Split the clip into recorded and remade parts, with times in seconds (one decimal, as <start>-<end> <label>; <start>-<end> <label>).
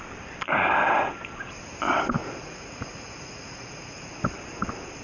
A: 0.0-2.2 recorded; 2.2-4.1 remade; 4.1-5.0 recorded